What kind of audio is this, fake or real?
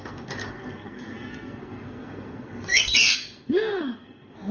fake